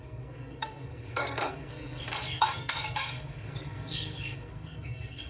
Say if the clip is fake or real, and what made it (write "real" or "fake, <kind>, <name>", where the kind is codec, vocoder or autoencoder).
fake, codec, SNAC